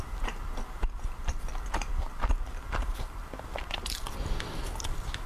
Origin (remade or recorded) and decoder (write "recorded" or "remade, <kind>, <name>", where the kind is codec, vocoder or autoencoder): remade, vocoder, BigVGAN v2